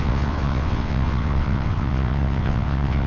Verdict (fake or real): fake